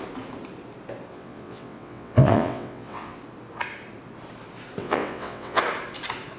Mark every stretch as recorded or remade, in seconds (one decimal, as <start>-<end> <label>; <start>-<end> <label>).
0.0-1.1 recorded; 1.1-3.2 remade; 3.2-4.8 recorded; 4.8-5.6 remade; 5.6-6.4 recorded